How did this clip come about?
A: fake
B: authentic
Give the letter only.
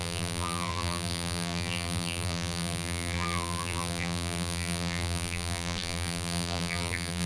A